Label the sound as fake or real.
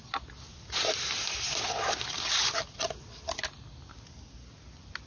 real